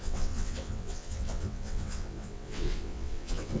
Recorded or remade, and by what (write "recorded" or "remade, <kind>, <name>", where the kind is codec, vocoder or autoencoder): remade, vocoder, WaveNeXt